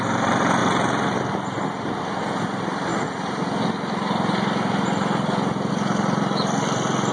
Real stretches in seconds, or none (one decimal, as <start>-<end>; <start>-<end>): 0.6-2.0; 2.9-5.7